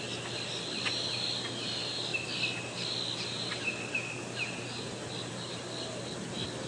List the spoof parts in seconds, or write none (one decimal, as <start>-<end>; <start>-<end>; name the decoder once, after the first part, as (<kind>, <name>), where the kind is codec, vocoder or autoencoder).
none